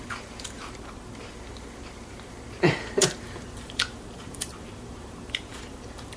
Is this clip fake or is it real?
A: fake